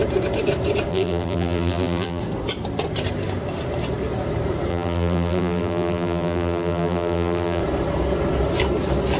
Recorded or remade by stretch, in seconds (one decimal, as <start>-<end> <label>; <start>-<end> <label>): 0.0-0.9 recorded; 0.9-2.2 remade; 2.2-4.7 recorded; 4.7-7.6 remade; 7.6-9.2 recorded